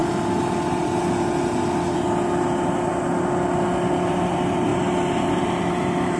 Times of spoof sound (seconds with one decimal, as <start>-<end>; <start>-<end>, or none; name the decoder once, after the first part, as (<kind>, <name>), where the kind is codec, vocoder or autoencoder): none